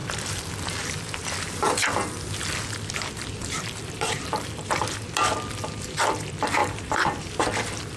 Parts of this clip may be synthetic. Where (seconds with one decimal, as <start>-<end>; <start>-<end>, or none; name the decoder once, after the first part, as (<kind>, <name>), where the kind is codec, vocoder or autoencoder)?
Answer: 3.4-4.8 (vocoder, BigVGAN v2); 6.6-7.2

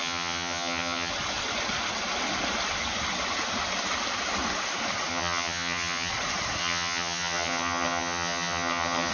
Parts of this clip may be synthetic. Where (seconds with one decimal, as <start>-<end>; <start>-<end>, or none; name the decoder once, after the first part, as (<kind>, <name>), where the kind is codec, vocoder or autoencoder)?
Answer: 0.0-1.1 (vocoder, HiFi-GAN); 5.1-6.1; 6.6-9.1